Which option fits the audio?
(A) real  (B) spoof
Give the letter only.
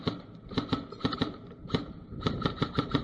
B